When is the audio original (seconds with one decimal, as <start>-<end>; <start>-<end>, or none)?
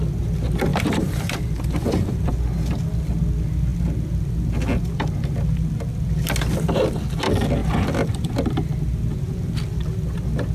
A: 0.0-0.7; 2.3-7.6; 8.3-10.5